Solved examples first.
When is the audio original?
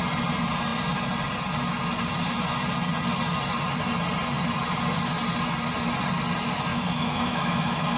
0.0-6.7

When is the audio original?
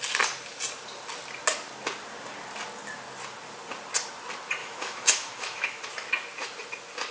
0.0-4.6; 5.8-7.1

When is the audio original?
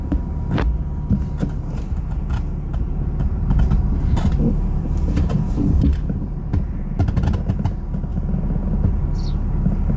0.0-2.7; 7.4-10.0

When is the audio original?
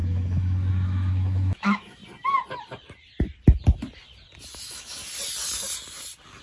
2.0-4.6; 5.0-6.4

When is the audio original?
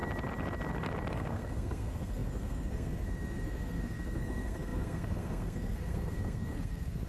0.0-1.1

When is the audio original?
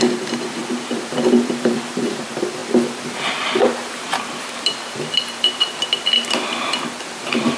none